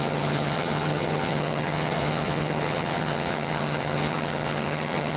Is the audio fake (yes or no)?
yes